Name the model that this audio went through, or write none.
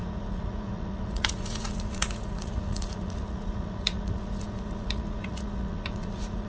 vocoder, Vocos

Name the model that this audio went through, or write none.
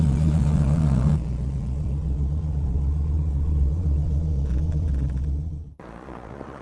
vocoder, Vocos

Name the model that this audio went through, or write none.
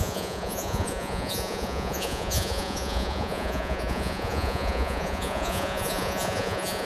vocoder, Vocos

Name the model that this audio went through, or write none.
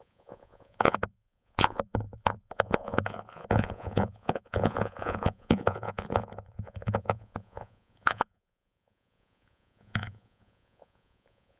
vocoder, Vocos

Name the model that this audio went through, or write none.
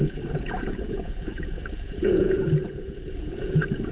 vocoder, Vocos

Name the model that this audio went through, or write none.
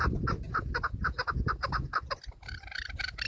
none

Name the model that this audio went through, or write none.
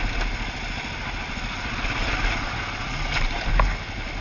none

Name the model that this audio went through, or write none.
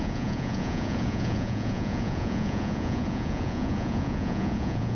vocoder, Vocos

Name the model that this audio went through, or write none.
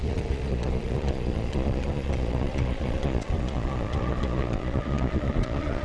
vocoder, Vocos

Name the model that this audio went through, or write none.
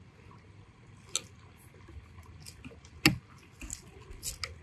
none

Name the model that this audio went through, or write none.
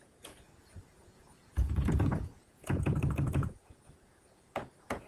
vocoder, Vocos